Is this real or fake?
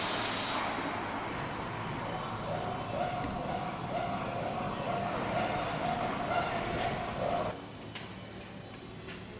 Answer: real